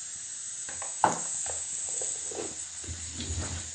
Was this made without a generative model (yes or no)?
yes